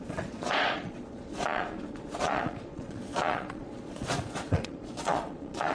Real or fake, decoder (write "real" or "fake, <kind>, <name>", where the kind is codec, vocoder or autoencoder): fake, vocoder, Vocos